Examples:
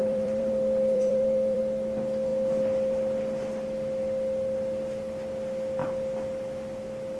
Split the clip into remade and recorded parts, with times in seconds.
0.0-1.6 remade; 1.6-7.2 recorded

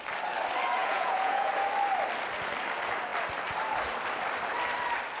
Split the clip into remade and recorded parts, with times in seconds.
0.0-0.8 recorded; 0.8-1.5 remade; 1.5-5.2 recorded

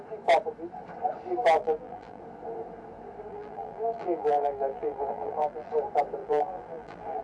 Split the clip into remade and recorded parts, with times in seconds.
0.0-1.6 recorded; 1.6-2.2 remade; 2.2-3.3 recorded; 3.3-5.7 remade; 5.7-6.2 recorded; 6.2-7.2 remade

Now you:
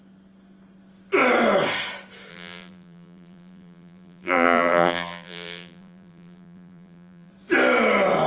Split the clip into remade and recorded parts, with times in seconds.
0.0-2.3 recorded; 2.3-7.3 remade; 7.3-8.3 recorded

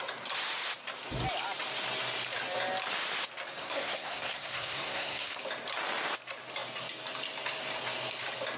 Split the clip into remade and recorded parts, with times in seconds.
0.0-3.6 recorded; 3.6-5.4 remade; 5.4-8.6 recorded